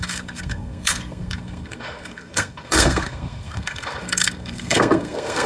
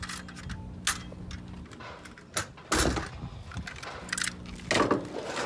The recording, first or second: second